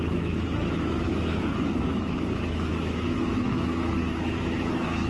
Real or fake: fake